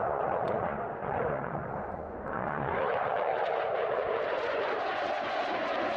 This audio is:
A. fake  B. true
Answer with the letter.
A